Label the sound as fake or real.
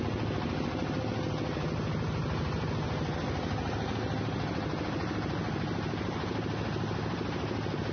real